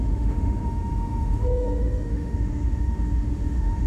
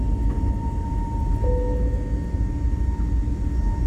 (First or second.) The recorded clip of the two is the second